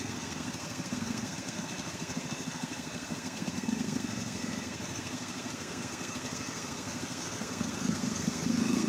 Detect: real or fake fake